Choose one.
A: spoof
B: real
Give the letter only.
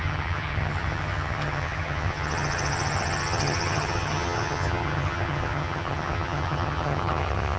A